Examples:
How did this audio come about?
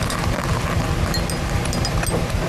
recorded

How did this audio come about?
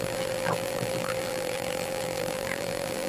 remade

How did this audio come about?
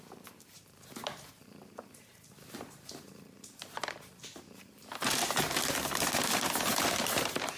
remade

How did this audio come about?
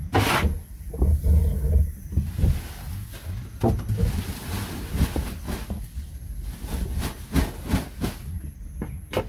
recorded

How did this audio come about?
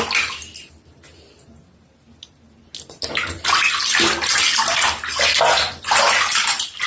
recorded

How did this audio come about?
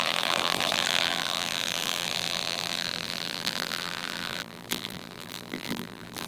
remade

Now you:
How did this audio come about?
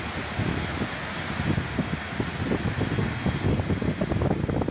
recorded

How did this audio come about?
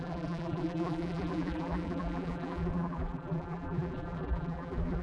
remade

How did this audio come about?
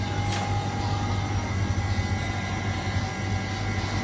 recorded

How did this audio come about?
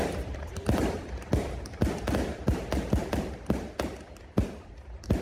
remade